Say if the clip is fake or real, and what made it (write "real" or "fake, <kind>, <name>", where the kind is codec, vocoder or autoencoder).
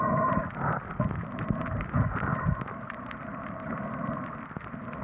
real